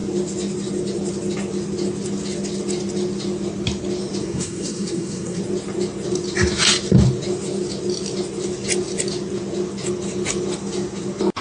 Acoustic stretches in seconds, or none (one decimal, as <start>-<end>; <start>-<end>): 0.0-4.2; 5.4-11.4